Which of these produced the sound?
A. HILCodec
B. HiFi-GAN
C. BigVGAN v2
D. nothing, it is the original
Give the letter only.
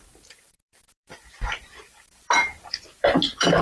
C